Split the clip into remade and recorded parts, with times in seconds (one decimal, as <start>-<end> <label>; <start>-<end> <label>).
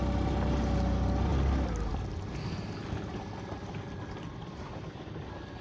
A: 0.0-5.6 recorded